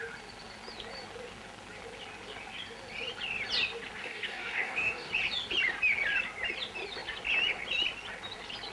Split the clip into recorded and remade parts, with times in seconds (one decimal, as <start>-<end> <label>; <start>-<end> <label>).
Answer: 0.0-4.0 recorded; 4.0-5.1 remade; 5.1-8.7 recorded